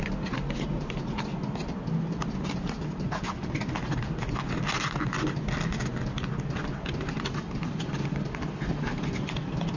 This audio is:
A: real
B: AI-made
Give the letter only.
A